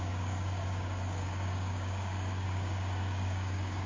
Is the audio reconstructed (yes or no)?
yes